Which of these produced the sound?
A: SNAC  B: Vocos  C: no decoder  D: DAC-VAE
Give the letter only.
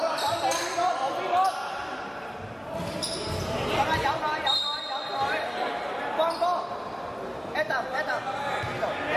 C